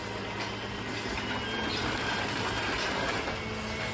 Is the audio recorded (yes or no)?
yes